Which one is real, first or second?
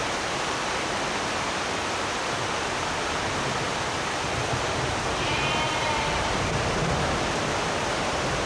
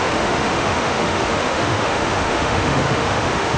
first